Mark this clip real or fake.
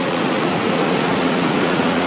fake